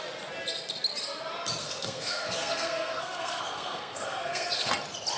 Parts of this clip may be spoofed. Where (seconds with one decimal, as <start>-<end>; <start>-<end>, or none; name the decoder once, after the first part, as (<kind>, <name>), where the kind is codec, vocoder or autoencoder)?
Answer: 1.6-4.7 (codec, SNAC)